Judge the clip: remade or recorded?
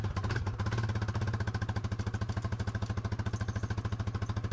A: recorded